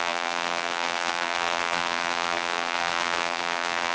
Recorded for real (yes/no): no